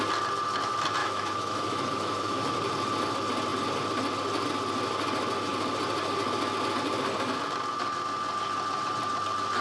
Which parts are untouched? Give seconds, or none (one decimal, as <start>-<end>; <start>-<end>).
0.0-1.0; 2.5-9.6